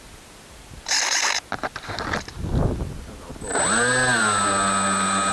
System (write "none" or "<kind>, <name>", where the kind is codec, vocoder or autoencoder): none